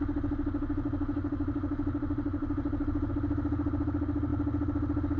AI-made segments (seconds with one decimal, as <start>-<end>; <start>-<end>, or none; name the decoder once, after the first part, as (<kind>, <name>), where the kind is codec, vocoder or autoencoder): none